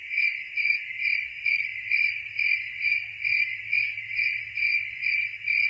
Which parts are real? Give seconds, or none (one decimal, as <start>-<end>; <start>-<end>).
0.0-1.7; 2.5-5.7